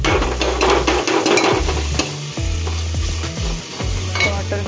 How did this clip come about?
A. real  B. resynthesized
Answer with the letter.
A